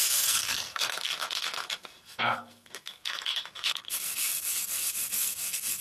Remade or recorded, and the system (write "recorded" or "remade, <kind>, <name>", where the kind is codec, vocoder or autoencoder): remade, codec, SNAC